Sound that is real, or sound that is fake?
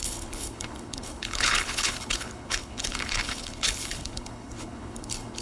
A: fake